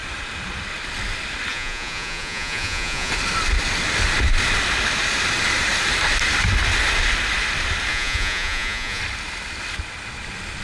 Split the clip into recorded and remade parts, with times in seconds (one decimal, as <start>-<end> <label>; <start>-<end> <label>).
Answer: 0.0-1.5 recorded; 1.5-3.1 remade; 3.1-7.9 recorded; 7.9-9.0 remade; 9.0-10.6 recorded